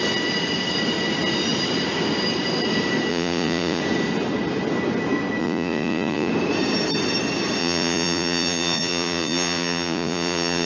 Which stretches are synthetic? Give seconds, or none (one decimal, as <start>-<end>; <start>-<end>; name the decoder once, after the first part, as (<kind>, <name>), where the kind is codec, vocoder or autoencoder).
3.1-3.8 (vocoder, Vocos); 5.4-6.3; 7.6-10.7

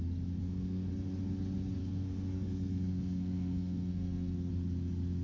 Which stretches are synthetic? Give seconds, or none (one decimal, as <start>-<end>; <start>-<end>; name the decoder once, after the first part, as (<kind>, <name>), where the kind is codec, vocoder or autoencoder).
0.4-0.9 (codec, SNAC); 1.8-4.5

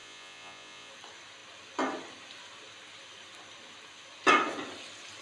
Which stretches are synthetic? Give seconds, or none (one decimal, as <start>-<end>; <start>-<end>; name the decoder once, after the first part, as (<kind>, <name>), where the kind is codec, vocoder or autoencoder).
0.0-0.9 (vocoder, Vocos)

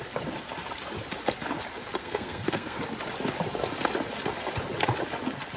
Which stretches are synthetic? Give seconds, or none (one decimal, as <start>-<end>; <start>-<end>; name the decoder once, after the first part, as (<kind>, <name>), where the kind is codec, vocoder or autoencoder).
2.0-2.8 (codec, SNAC)

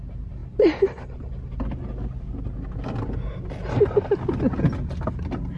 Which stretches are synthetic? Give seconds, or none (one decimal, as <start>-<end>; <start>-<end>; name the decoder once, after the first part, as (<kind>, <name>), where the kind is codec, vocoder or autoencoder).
none

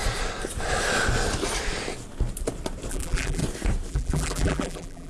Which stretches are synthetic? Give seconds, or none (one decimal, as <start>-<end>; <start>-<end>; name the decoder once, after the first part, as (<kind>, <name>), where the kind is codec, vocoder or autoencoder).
2.9-3.4 (vocoder, BigVGAN v2); 3.9-5.1